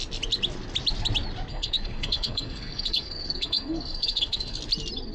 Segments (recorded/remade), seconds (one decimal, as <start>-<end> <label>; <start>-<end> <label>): 0.0-1.5 recorded; 1.5-4.6 remade; 4.6-5.1 recorded